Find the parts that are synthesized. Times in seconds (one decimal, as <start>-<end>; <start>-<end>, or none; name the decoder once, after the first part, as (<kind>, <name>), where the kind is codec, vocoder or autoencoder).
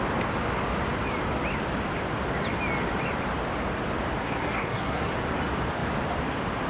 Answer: 4.2-5.1 (codec, SNAC)